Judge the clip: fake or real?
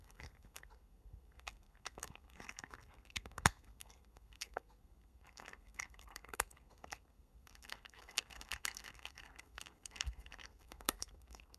fake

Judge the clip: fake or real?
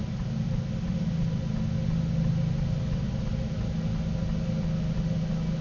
real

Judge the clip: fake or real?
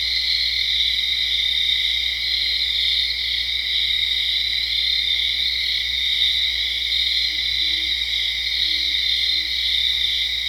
real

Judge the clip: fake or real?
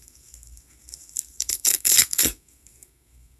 fake